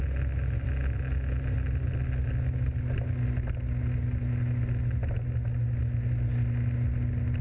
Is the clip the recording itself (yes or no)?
yes